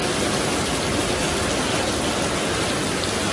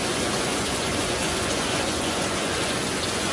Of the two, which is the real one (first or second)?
first